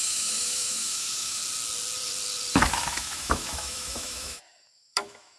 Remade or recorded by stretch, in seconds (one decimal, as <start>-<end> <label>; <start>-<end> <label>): 0.0-1.4 remade; 1.4-2.5 recorded; 2.5-5.4 remade